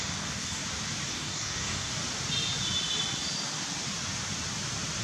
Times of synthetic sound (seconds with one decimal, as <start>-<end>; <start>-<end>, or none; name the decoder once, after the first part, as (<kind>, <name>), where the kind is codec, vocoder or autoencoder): 0.0-0.6 (codec, DAC); 1.1-1.9